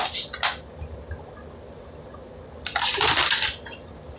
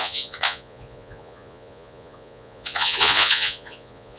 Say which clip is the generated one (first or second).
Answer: second